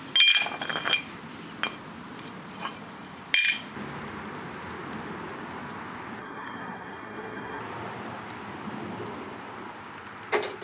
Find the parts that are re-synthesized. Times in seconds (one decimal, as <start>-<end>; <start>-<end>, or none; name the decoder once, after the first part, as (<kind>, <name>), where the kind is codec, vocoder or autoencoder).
6.2-7.6 (codec, SNAC)